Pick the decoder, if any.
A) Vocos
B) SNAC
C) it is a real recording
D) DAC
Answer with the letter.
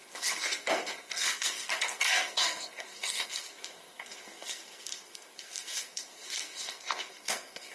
B